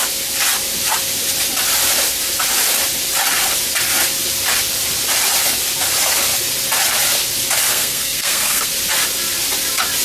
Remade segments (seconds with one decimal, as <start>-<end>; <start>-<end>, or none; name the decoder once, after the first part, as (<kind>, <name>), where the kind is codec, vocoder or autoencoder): 7.7-8.7 (codec, SNAC)